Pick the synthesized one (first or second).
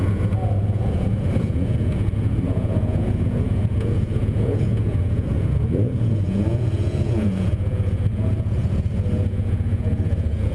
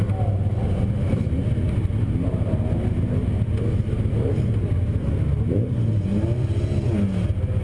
first